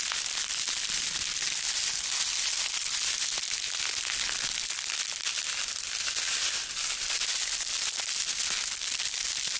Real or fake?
real